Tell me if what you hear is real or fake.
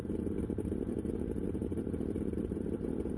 fake